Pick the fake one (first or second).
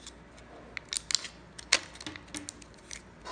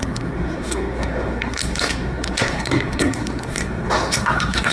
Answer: second